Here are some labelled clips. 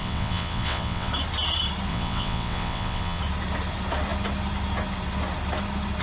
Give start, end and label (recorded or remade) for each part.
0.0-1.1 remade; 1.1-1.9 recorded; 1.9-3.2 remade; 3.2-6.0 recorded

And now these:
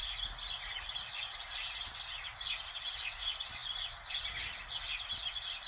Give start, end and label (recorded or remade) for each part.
0.0-5.7 recorded

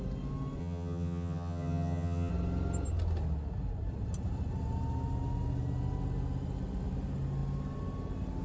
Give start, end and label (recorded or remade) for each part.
0.0-0.6 recorded; 0.6-2.3 remade; 2.3-8.4 recorded

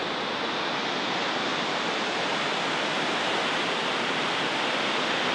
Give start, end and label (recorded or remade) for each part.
0.0-5.3 recorded

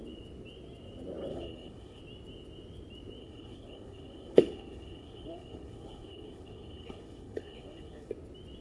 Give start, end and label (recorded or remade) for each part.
0.0-1.3 recorded; 1.3-2.0 remade; 2.0-3.2 recorded; 3.2-8.1 remade; 8.1-8.6 recorded

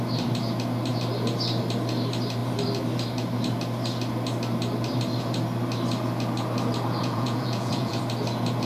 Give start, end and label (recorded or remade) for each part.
0.0-7.0 recorded; 7.0-8.0 remade; 8.0-8.7 recorded